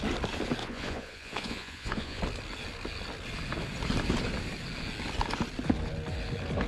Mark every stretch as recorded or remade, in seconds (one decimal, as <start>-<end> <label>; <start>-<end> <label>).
0.0-0.6 recorded; 0.6-2.2 remade; 2.2-6.7 recorded